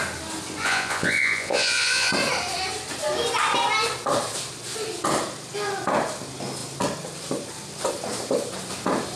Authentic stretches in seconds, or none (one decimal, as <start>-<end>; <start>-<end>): 0.0-0.6; 2.1-9.2